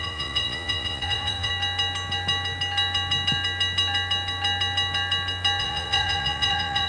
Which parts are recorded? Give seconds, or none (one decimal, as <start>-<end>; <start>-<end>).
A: 1.5-5.6